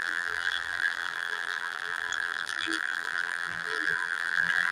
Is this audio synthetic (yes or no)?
yes